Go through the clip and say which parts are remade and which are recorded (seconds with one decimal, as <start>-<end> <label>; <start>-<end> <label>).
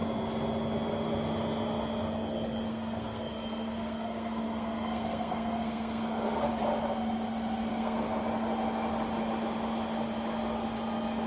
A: 0.0-2.7 recorded; 2.7-6.5 remade; 6.5-7.7 recorded; 7.7-8.2 remade; 8.2-11.3 recorded